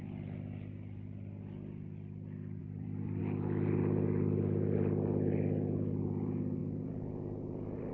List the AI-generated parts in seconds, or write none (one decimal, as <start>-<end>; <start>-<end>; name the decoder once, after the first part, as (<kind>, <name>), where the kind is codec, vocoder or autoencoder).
2.6-3.2 (vocoder, BigVGAN v2); 6.6-7.9